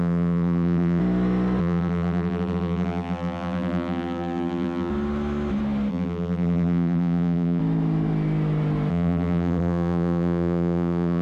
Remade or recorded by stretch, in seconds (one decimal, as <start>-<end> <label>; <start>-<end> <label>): 0.0-1.0 remade; 1.0-1.6 recorded; 1.6-4.9 remade; 4.9-5.9 recorded; 5.9-7.6 remade; 7.6-8.9 recorded; 8.9-11.2 remade